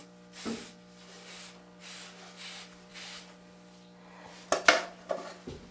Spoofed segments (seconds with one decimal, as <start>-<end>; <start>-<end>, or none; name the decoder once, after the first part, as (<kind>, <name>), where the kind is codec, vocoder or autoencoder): none